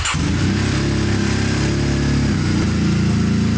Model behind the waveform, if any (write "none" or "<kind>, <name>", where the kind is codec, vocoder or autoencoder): none